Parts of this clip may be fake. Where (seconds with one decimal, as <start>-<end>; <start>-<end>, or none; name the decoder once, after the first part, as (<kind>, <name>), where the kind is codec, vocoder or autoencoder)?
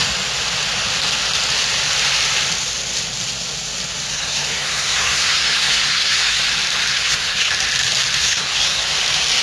4.1-6.4 (codec, SNAC); 6.9-7.5; 8.2-8.9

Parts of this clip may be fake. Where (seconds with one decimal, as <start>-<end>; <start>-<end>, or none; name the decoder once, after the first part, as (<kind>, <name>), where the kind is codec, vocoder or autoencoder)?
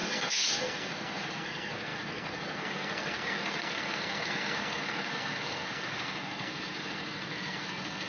0.0-8.1 (codec, SNAC)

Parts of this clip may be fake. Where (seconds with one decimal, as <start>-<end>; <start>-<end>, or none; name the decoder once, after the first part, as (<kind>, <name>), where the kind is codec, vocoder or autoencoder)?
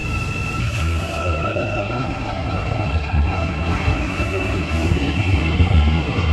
0.6-6.3 (codec, SNAC)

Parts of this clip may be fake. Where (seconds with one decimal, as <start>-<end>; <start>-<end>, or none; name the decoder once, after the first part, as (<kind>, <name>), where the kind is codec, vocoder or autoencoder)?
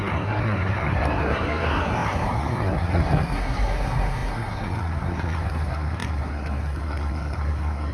0.0-7.9 (codec, SNAC)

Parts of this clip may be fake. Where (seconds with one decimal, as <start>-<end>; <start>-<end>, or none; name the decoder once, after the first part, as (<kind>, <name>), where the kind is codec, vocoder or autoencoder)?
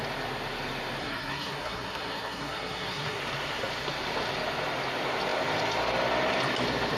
1.0-3.2 (codec, SNAC)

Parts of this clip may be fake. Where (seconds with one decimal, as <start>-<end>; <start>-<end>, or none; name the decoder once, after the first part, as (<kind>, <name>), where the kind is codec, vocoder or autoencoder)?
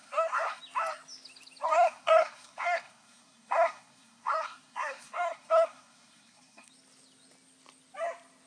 0.0-0.6 (codec, SNAC); 1.7-6.7